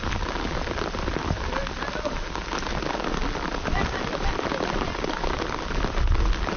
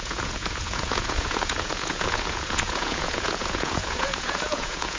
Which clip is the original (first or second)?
first